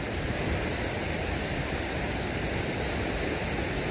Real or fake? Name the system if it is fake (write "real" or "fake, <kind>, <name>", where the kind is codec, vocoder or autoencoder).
real